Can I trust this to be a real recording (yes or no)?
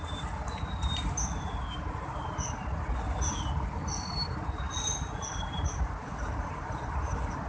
yes